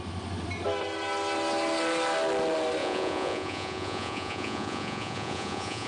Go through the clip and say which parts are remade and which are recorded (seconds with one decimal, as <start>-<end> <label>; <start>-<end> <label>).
0.0-2.8 recorded; 2.8-5.9 remade